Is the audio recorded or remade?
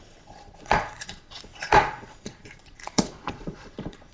remade